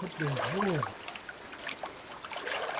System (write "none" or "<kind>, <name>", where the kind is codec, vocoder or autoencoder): none